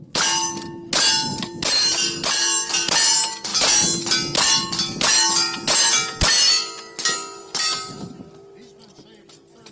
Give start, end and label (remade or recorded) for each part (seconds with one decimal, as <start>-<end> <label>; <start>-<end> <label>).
0.0-1.3 recorded; 1.3-2.7 remade; 2.7-7.4 recorded; 7.4-8.0 remade; 8.0-9.7 recorded